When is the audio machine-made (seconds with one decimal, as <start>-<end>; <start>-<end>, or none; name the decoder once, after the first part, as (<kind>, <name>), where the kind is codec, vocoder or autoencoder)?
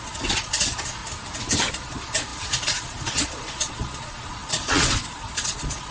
0.0-1.0 (vocoder, Vocos); 1.7-5.9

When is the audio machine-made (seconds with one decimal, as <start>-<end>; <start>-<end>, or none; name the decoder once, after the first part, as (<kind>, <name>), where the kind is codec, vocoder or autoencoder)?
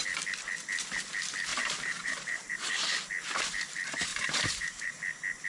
1.5-2.7 (vocoder, BigVGAN v2); 4.1-4.9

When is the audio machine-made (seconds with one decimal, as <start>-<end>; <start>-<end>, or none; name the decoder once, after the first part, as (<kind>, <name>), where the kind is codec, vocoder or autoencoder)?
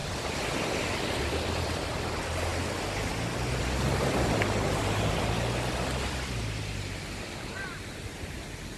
none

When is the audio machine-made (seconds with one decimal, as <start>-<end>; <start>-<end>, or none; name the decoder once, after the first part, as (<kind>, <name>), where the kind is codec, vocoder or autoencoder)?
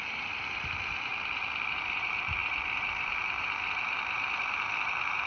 0.0-1.1 (vocoder, BigVGAN v2); 1.7-5.3